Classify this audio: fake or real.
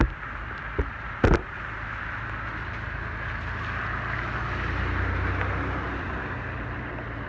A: real